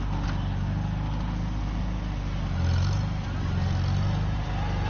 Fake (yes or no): no